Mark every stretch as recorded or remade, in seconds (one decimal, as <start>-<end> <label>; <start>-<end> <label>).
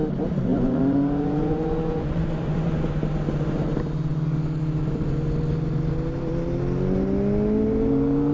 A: 0.0-0.5 recorded; 0.5-2.9 remade; 2.9-8.3 recorded